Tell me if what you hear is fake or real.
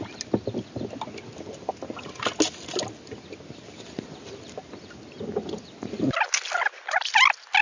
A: real